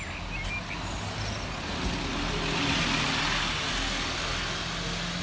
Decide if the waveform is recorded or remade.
recorded